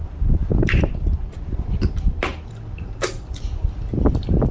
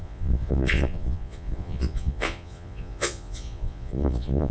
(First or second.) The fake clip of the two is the second